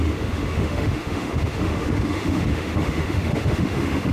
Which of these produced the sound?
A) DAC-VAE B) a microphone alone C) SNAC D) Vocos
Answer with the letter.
A